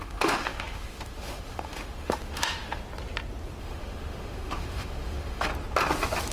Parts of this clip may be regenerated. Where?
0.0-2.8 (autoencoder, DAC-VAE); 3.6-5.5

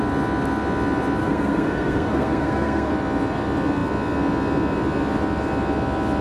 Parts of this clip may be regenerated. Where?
1.2-2.9 (codec, SNAC)

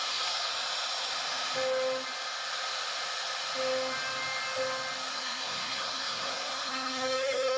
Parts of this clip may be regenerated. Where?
0.0-0.5 (codec, SNAC); 5.1-7.6

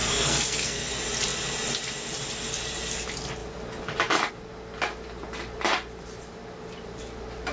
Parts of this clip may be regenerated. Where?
0.0-0.9 (codec, SNAC)

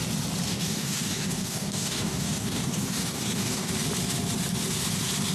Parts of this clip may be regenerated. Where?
0.5-3.7 (codec, DAC)